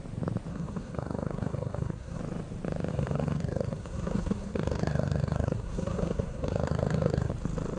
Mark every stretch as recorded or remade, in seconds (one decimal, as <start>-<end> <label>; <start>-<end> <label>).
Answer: 0.0-0.5 recorded; 0.5-2.2 remade; 2.2-2.9 recorded; 2.9-7.3 remade; 7.3-7.8 recorded